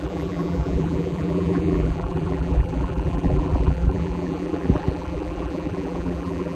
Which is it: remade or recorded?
remade